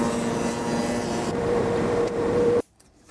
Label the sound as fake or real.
fake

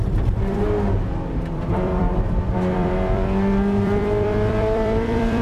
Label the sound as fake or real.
fake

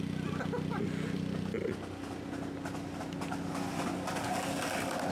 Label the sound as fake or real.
real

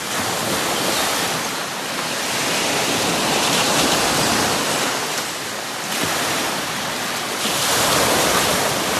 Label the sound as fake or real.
real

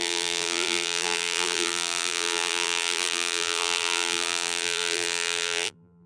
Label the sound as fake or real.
fake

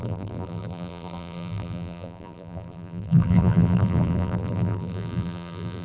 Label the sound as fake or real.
fake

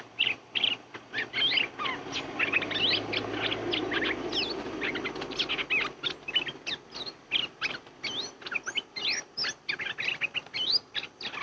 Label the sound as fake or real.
real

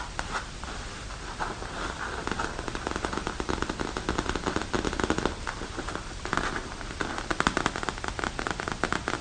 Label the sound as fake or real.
real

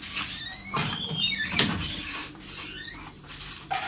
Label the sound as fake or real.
fake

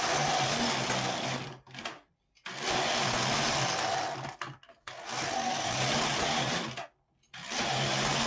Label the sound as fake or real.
real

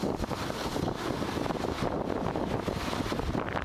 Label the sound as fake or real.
fake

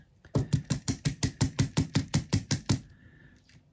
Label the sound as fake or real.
fake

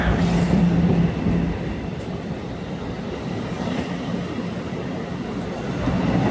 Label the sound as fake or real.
real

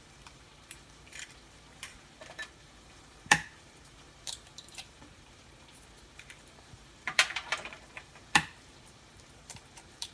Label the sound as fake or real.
fake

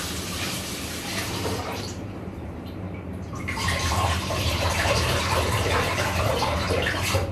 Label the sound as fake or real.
fake